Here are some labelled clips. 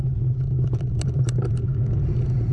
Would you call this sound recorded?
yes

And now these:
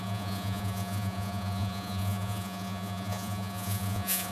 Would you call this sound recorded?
no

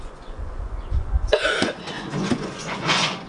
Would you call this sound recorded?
no